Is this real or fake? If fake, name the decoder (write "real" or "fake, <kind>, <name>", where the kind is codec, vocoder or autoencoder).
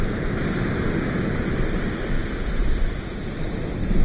real